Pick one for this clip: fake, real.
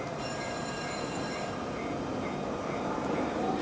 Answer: fake